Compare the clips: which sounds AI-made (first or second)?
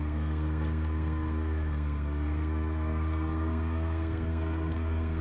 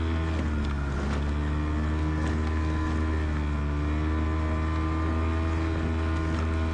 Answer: first